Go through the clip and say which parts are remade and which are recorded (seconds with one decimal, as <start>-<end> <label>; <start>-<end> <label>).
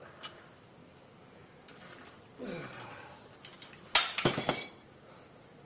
0.0-5.7 recorded